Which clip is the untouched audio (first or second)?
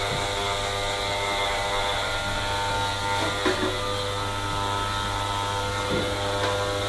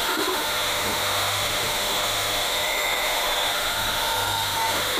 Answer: first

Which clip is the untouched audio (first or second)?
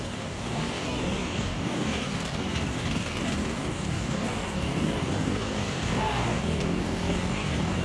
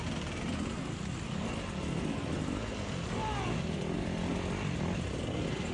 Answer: second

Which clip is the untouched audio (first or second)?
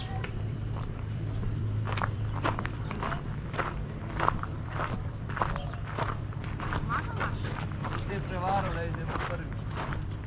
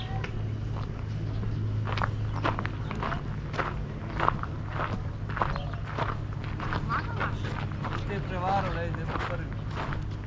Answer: second